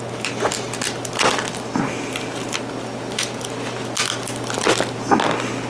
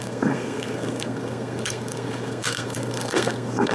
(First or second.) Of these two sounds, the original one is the first